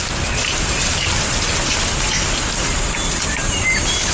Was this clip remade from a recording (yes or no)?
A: no